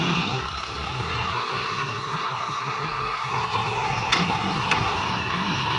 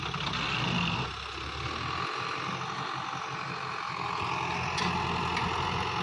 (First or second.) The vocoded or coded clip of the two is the first